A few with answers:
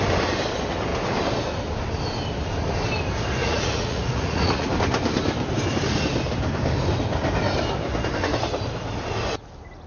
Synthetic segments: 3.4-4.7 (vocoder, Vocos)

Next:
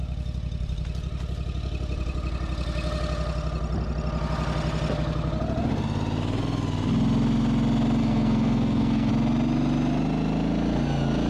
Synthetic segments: 8.0-9.1 (codec, SNAC)

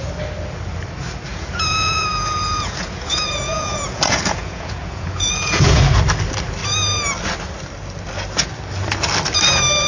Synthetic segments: 1.3-6.0 (vocoder, Vocos)

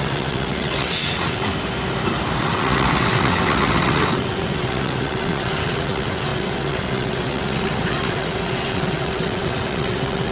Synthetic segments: 0.0-1.5 (vocoder, WaveNeXt); 2.4-10.3

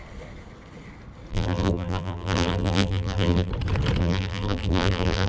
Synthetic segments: 1.3-3.5 (vocoder, BigVGAN v2); 4.0-5.3